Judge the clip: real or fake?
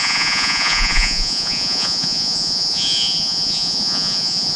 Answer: fake